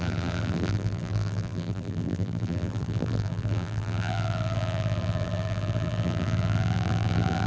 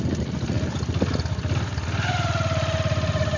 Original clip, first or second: second